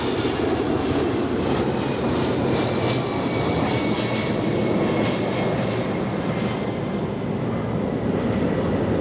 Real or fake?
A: real